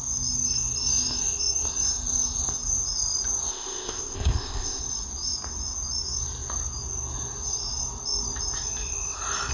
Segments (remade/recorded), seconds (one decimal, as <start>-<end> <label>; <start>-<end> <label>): 0.0-3.5 recorded; 3.5-4.8 remade; 4.8-9.5 recorded